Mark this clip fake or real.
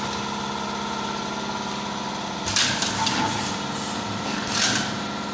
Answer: real